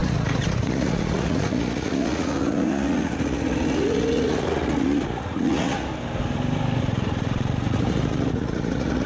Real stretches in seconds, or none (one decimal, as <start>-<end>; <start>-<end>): 5.9-6.8